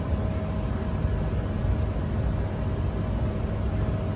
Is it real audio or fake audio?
real